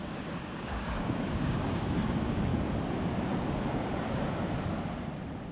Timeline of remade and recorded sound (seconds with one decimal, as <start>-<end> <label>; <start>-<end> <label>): 0.0-2.5 remade; 2.5-5.5 recorded